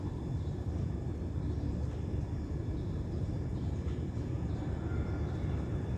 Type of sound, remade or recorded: recorded